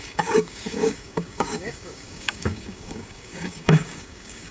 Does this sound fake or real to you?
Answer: fake